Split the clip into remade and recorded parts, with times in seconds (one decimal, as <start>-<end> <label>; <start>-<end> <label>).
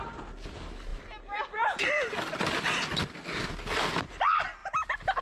0.0-5.2 recorded